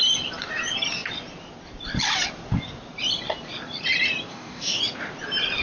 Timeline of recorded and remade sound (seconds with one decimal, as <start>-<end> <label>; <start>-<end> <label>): 0.0-4.3 recorded; 4.3-4.8 remade; 4.8-5.6 recorded